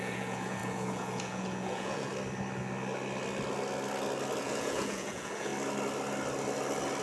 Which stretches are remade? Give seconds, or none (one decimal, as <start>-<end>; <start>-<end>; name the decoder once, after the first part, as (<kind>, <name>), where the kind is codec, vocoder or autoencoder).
0.0-2.1 (vocoder, Vocos); 4.4-5.5